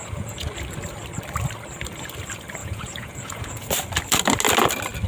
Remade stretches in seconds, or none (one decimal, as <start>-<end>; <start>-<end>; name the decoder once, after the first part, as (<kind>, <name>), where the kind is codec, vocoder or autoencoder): 0.0-0.5 (vocoder, Vocos); 2.6-3.7